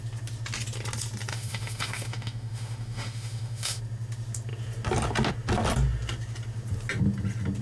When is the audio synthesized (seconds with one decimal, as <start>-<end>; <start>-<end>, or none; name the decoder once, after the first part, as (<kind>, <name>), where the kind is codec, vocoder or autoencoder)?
1.3-3.8 (autoencoder, DAC-VAE)